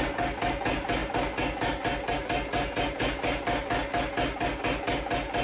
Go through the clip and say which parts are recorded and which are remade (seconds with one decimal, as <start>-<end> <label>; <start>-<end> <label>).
0.0-5.4 recorded

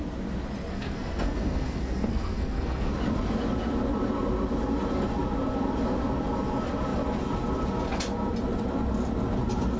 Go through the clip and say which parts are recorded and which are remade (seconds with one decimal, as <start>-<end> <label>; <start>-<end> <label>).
0.0-0.7 recorded; 0.7-2.9 remade; 2.9-9.8 recorded

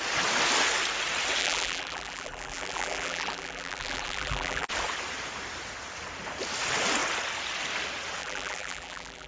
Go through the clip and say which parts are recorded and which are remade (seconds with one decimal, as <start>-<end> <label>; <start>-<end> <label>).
0.0-1.4 recorded; 1.4-4.7 remade; 4.7-8.2 recorded; 8.2-9.3 remade

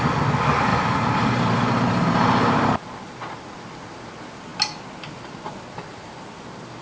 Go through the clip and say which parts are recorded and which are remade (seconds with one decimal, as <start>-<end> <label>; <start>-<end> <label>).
0.0-0.7 recorded; 0.7-2.5 remade; 2.5-6.8 recorded

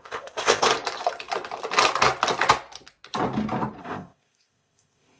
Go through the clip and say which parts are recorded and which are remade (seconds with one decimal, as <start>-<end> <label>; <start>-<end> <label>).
0.0-0.7 remade; 0.7-3.8 recorded; 3.8-5.2 remade

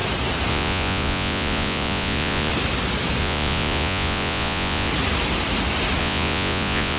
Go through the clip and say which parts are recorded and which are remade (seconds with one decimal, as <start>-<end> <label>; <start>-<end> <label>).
0.0-0.5 recorded; 0.5-2.5 remade; 2.5-3.2 recorded; 3.2-4.9 remade; 4.9-6.0 recorded; 6.0-7.0 remade

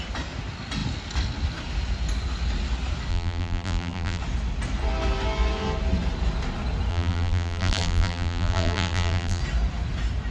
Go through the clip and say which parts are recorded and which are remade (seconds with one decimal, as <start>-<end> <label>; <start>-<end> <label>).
0.0-3.1 recorded; 3.1-4.2 remade; 4.2-6.9 recorded; 6.9-9.4 remade; 9.4-10.3 recorded

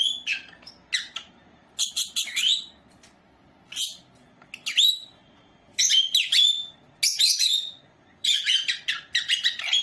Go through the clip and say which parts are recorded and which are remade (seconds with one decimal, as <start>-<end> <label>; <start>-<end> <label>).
0.0-7.3 recorded; 7.3-8.4 remade; 8.4-9.8 recorded